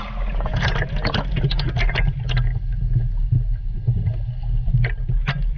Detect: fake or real real